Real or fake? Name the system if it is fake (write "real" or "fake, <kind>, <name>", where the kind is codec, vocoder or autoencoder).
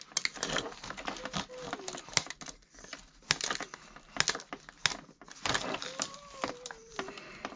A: real